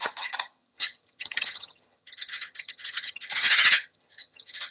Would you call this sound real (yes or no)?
no